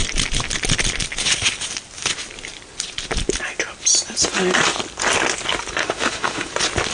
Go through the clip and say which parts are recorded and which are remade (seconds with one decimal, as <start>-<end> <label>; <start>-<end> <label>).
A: 0.0-5.8 recorded; 5.8-6.5 remade; 6.5-6.9 recorded